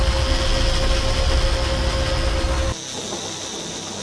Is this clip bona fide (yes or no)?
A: yes